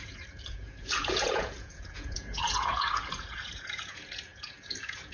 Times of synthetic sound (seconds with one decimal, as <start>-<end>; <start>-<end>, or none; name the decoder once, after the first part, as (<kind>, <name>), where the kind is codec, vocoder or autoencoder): 0.0-5.1 (vocoder, Vocos)